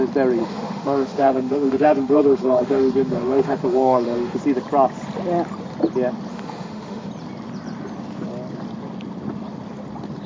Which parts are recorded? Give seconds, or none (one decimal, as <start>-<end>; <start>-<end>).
0.0-0.4; 4.4-6.3; 7.1-10.3